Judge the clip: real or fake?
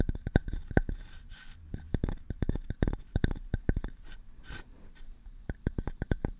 fake